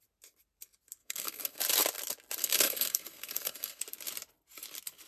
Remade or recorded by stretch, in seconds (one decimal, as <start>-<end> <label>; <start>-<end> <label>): 0.0-1.0 recorded; 1.0-1.6 remade; 1.6-2.4 recorded; 2.4-3.8 remade; 3.8-5.1 recorded